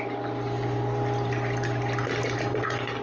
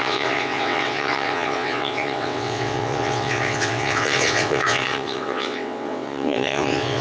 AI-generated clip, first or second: second